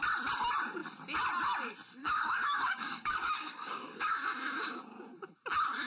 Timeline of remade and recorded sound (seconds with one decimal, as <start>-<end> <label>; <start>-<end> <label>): 0.0-2.0 recorded; 2.0-4.8 remade; 4.8-5.9 recorded